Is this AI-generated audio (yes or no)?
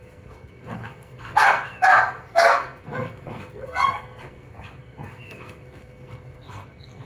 yes